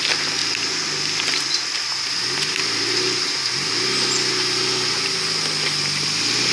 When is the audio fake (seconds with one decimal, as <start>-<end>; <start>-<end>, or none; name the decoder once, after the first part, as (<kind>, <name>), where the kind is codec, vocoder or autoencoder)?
none